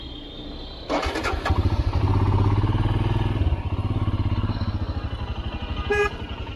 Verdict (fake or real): real